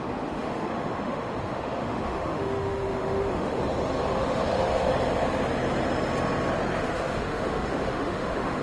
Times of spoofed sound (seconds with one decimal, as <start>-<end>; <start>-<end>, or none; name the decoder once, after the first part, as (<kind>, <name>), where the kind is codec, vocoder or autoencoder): 0.0-3.6 (autoencoder, DAC-VAE); 4.2-4.9; 6.8-8.6